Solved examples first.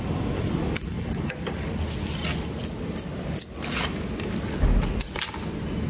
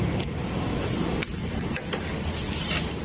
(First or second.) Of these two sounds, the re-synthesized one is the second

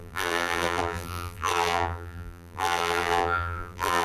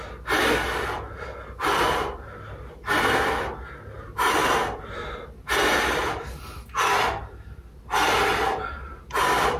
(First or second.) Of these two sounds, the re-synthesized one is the first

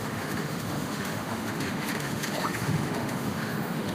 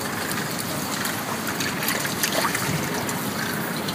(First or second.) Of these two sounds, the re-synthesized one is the first